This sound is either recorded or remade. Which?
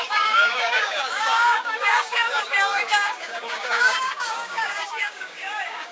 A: remade